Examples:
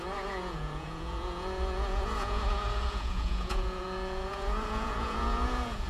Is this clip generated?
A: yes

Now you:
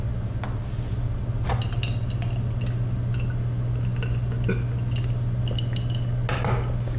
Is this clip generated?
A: no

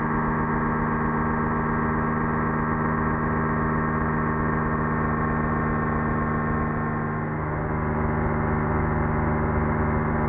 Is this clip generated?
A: no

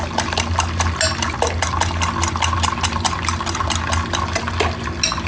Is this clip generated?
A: no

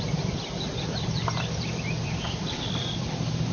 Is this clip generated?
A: yes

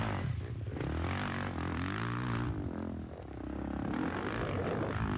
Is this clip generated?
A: no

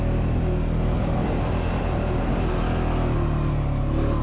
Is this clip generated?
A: no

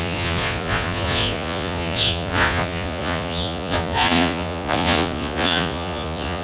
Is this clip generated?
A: yes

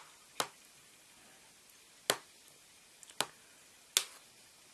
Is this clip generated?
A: no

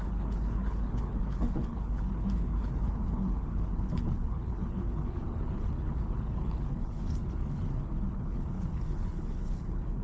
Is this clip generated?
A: yes